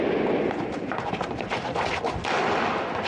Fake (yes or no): no